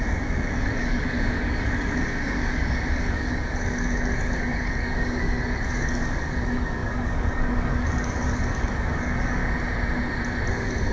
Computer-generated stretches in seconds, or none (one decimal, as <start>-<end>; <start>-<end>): 0.0-9.4; 10.5-10.9